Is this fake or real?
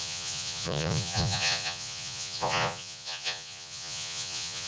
fake